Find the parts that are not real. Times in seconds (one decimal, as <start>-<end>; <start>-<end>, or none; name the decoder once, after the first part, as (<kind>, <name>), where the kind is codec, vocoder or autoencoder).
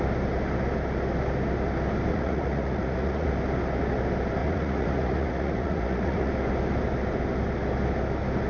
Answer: 2.1-3.3 (vocoder, Vocos); 4.4-6.3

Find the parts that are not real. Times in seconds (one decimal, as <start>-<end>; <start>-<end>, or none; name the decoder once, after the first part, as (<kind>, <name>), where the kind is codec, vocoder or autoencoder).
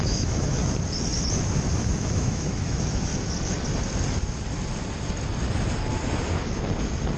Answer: 0.0-0.6 (autoencoder, DAC-VAE); 1.7-3.1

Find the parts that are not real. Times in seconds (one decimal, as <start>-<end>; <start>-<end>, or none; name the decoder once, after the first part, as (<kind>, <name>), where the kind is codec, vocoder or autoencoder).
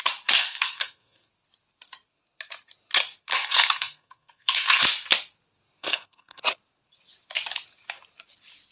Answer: 0.4-1.3 (codec, SNAC); 3.3-4.8; 5.8-6.4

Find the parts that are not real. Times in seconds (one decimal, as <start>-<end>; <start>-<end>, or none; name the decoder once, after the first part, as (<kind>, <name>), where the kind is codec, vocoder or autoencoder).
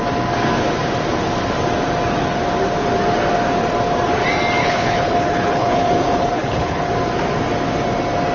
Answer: 4.6-6.9 (codec, HILCodec)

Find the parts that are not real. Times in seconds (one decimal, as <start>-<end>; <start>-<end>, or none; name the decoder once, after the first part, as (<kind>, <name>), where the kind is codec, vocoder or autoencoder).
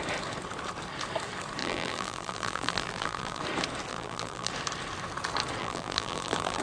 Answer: 1.6-3.4 (vocoder, BigVGAN v2); 3.9-4.5; 5.6-6.6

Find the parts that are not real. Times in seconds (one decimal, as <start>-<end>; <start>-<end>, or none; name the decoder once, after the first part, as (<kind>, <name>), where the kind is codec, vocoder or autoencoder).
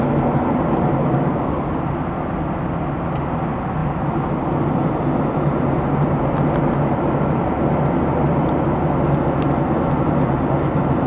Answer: 1.0-1.6 (codec, DAC)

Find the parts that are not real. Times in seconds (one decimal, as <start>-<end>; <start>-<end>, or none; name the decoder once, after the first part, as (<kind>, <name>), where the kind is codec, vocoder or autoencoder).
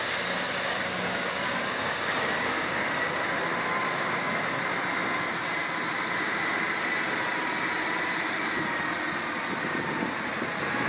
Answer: 0.8-2.9 (codec, DAC); 3.5-4.3